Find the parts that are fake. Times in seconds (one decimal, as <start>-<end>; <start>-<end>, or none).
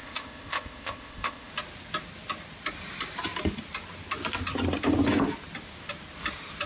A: 0.0-1.5